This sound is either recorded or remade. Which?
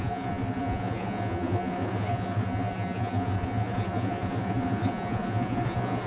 remade